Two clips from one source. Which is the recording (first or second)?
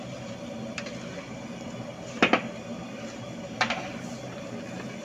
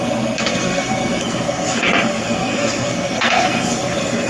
first